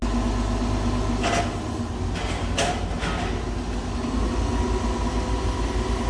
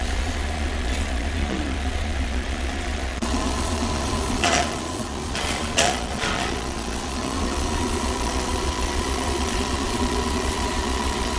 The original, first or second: first